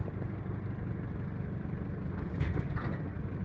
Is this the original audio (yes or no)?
yes